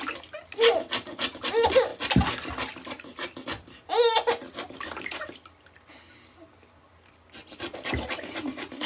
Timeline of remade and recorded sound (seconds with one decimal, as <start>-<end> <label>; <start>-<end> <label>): 0.0-8.9 recorded